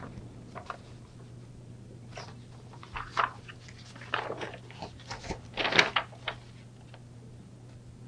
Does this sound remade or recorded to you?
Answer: recorded